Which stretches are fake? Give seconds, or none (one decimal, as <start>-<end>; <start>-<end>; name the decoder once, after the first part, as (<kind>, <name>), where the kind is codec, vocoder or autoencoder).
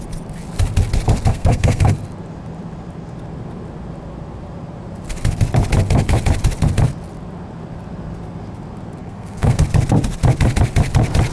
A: 1.3-1.9 (codec, SNAC); 9.0-9.6